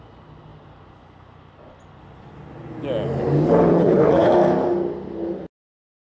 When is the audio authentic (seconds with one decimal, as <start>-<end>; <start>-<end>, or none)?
0.0-3.7; 4.3-6.1